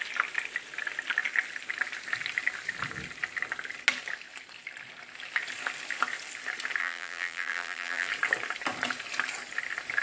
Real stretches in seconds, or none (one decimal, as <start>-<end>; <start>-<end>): 0.0-6.8; 8.1-10.0